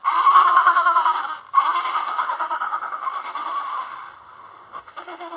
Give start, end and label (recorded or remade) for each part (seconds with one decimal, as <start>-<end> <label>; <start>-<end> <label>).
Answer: 0.0-0.5 recorded; 0.5-1.2 remade; 1.2-1.8 recorded; 1.8-5.4 remade